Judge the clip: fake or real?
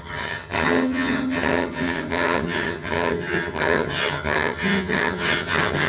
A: fake